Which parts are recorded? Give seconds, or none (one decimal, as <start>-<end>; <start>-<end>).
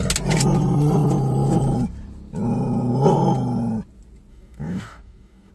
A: 0.0-4.3